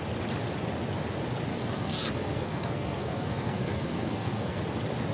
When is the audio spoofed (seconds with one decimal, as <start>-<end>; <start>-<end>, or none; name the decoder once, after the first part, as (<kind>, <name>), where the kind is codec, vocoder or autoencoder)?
1.5-4.6 (codec, SNAC)